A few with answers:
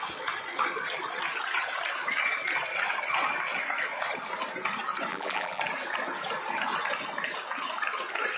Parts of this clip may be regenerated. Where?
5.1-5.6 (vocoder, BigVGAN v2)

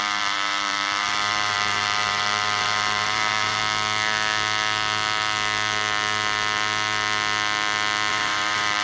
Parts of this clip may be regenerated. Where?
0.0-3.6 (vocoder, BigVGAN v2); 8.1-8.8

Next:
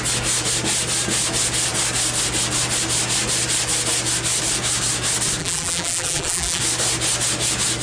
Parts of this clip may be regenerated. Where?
5.4-6.6 (vocoder, BigVGAN v2)

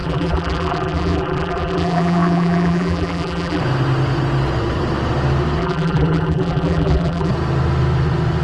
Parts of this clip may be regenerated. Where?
0.0-3.6 (vocoder, BigVGAN v2); 5.6-7.3